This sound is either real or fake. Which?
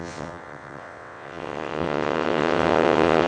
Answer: fake